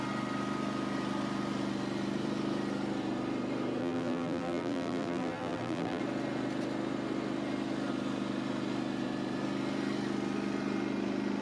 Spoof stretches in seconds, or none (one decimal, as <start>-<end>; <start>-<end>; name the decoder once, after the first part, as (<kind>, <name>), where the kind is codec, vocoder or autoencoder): 3.8-6.0 (vocoder, BigVGAN v2)